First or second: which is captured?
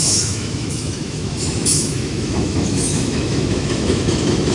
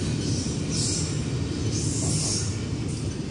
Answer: second